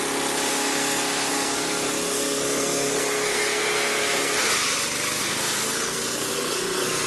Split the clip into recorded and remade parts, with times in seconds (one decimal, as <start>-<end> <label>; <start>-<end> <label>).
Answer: 0.0-0.5 recorded; 0.5-4.5 remade; 4.5-5.2 recorded; 5.2-7.1 remade